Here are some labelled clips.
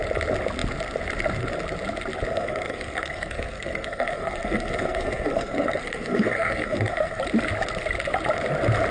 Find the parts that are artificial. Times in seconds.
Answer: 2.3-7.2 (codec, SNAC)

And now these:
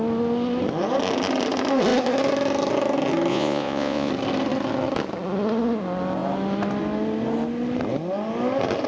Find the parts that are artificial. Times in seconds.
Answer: 3.3-4.1 (vocoder, Vocos)

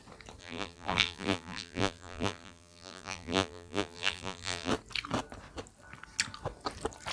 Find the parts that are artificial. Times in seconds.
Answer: 0.4-4.7 (vocoder, BigVGAN v2)

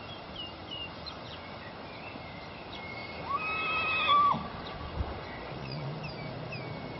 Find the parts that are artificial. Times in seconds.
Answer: 0.6-1.6 (vocoder, Vocos); 4.8-6.0

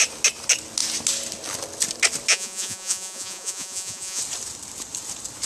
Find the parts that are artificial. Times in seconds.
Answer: 2.3-4.2 (vocoder, Vocos)

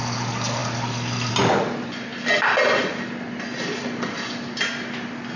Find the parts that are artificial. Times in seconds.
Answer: none